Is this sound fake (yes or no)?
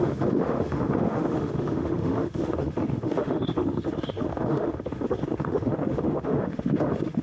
yes